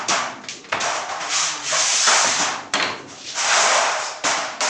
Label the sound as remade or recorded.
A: remade